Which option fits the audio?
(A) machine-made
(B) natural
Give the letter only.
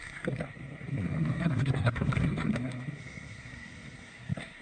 A